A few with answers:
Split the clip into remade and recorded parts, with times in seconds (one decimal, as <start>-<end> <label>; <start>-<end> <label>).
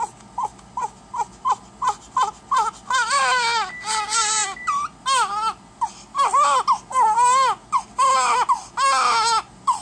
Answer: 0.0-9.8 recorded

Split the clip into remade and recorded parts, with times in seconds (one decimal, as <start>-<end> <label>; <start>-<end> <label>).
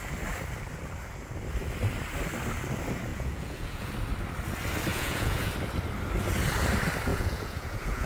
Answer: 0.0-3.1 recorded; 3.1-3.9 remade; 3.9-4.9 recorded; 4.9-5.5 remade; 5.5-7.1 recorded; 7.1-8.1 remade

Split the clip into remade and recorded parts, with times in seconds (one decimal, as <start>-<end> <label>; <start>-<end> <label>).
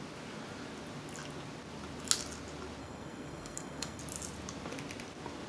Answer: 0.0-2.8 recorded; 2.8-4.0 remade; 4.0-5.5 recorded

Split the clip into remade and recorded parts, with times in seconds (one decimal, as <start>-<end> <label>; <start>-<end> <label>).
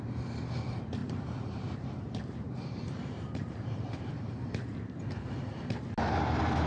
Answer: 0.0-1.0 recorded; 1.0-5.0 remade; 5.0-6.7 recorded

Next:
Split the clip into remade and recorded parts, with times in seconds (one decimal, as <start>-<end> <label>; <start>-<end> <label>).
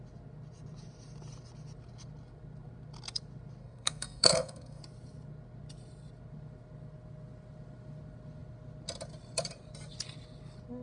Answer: 0.0-3.6 recorded; 3.6-4.8 remade; 4.8-10.8 recorded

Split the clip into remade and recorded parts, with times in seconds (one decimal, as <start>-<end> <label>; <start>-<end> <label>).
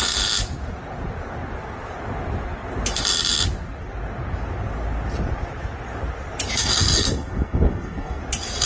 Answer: 0.0-6.6 recorded; 6.6-8.2 remade; 8.2-8.7 recorded